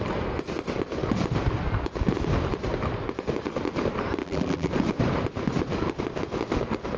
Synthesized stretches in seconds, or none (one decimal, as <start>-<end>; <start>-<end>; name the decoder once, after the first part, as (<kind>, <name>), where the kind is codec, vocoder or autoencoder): 4.2-4.7 (vocoder, BigVGAN v2)